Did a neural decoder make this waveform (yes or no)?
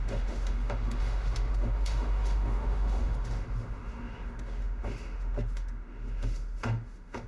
yes